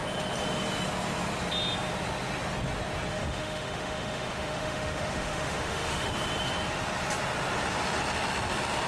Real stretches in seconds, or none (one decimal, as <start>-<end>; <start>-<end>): 0.0-3.1; 6.1-8.9